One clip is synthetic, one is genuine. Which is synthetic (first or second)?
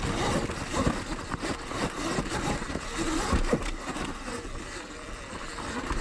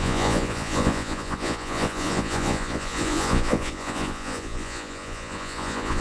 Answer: second